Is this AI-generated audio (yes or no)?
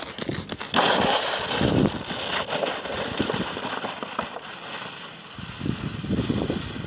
no